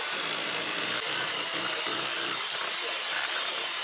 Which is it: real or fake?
fake